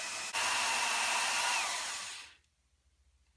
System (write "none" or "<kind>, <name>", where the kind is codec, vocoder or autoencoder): none